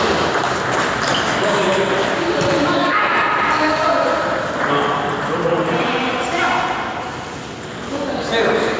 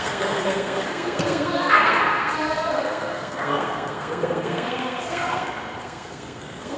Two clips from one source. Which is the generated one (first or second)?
second